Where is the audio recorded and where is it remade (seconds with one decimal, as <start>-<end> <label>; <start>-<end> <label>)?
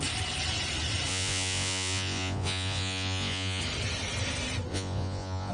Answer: 0.0-1.1 recorded; 1.1-3.6 remade; 3.6-4.7 recorded; 4.7-5.5 remade